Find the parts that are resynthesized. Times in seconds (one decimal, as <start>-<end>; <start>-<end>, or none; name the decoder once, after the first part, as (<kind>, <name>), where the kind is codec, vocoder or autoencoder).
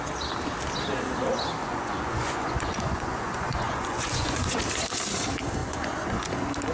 1.6-4.6 (vocoder, Vocos); 5.6-6.3